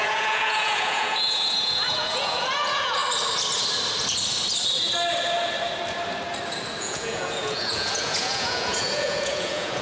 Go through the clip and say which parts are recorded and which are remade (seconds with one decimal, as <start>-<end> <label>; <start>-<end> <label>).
0.0-3.0 remade; 3.0-6.8 recorded; 6.8-9.8 remade